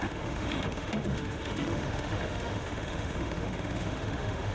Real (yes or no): no